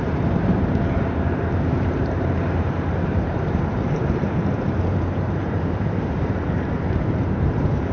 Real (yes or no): no